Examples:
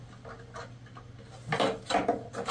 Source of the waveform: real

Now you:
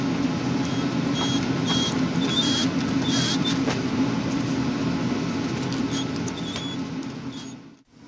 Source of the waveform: fake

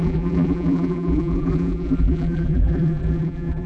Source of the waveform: fake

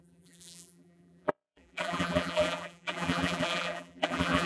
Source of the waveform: fake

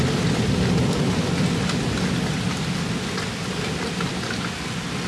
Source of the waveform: real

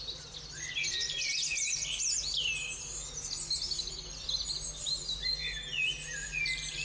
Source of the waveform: real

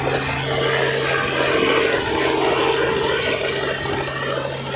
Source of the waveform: real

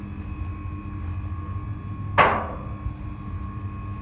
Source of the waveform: real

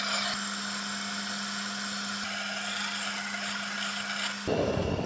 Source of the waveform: real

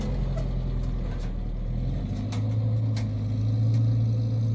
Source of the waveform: real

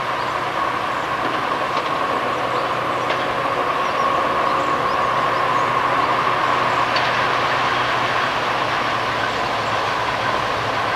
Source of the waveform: real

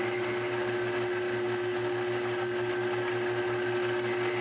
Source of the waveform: real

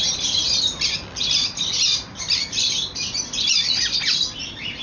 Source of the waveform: fake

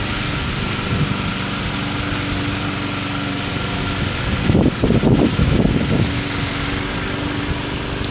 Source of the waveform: real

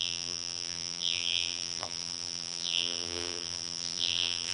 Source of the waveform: fake